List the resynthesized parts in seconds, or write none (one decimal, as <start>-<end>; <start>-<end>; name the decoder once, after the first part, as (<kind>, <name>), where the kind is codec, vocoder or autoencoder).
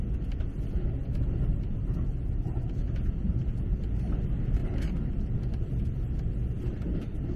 1.5-2.8 (vocoder, BigVGAN v2)